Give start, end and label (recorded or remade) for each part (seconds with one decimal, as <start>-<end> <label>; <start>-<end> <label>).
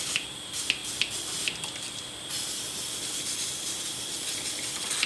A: 0.0-5.1 recorded